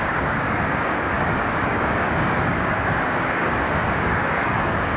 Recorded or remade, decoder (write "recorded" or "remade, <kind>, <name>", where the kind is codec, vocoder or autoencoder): remade, codec, DAC